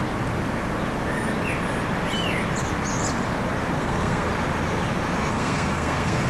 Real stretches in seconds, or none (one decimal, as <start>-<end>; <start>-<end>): 0.0-3.8; 4.3-5.3